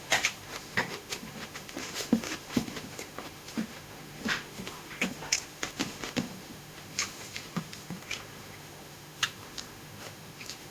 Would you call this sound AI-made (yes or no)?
yes